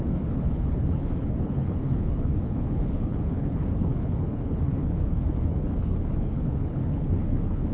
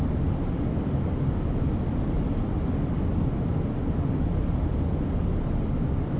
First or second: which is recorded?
second